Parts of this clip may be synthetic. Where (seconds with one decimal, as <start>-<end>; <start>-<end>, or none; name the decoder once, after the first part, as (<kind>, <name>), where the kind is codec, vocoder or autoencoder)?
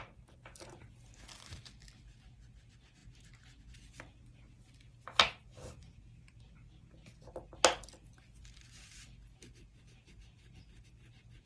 none